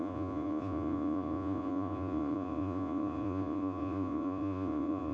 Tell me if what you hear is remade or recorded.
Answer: remade